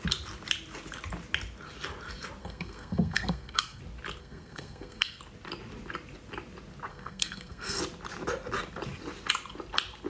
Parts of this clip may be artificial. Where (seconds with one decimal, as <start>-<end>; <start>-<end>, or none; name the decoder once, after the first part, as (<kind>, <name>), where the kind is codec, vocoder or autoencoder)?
2.4-3.8 (codec, SNAC); 4.2-5.2; 6.9-7.8